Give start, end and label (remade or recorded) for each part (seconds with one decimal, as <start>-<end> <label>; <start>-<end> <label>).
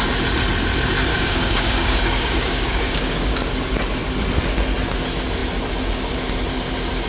0.0-1.1 recorded; 1.1-3.3 remade; 3.3-7.1 recorded